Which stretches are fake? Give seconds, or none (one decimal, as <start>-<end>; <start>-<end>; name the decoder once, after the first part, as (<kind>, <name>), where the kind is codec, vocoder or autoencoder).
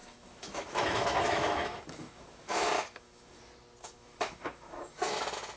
0.0-3.4 (autoencoder, DAC-VAE); 3.8-5.1